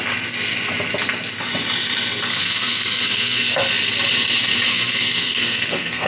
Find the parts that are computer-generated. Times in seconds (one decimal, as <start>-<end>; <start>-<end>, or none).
2.3-3.4; 4.7-6.1